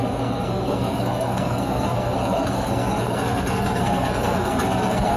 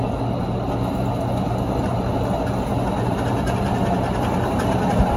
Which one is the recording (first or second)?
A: second